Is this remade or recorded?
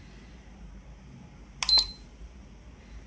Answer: recorded